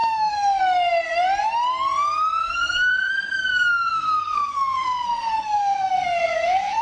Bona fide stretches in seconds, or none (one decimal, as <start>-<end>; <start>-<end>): 0.6-2.4